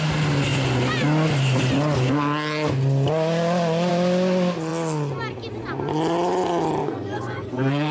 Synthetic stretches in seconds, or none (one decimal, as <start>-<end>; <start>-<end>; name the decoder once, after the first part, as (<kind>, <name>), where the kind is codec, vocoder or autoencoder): 6.8-7.9 (codec, SNAC)